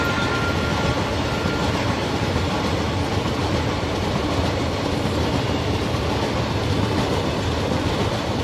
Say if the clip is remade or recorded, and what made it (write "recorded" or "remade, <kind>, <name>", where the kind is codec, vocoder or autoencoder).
recorded